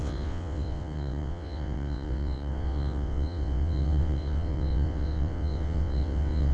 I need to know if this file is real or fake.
fake